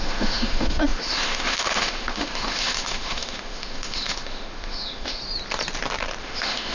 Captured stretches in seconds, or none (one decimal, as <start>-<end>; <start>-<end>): 5.2-6.2